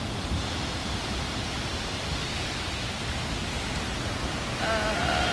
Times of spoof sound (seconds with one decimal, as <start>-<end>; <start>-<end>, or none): none